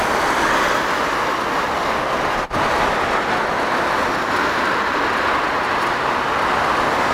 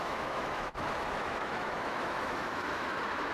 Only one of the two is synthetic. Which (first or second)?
second